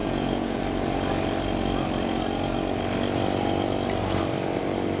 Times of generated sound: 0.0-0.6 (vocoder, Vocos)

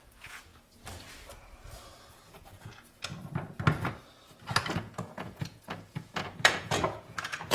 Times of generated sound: 0.0-0.5 (vocoder, Vocos); 2.1-3.1; 4.7-7.5

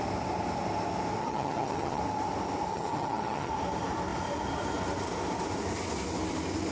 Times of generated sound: 1.2-2.0 (vocoder, HiFi-GAN); 2.7-3.5

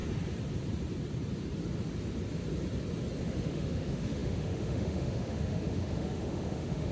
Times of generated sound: 3.2-6.9 (autoencoder, DAC-VAE)

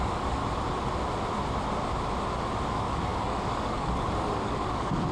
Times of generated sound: 0.0-0.4 (codec, DAC); 2.7-5.1

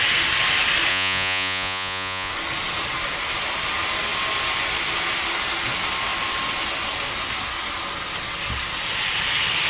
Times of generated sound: 0.9-2.3 (vocoder, Vocos)